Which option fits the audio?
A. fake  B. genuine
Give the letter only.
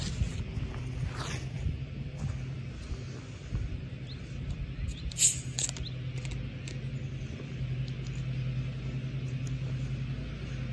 B